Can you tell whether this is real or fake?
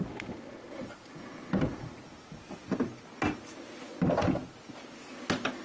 real